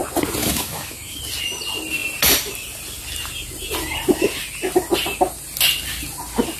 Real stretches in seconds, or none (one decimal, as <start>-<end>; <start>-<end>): 0.0-0.4; 1.2-6.6